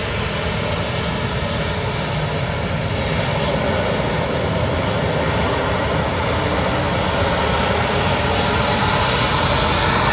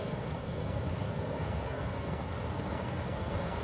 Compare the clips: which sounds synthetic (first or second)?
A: second